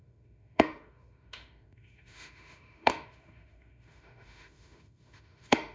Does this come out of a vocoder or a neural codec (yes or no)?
yes